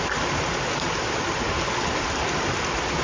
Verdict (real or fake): real